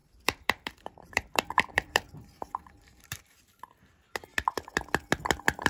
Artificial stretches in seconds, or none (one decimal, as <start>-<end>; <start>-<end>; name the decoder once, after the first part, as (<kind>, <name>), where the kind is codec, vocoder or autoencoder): 0.0-3.4 (vocoder, BigVGAN v2)